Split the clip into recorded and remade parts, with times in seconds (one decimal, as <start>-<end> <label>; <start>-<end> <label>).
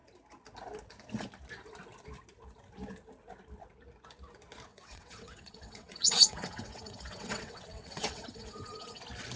0.0-4.7 recorded; 4.7-9.0 remade; 9.0-9.4 recorded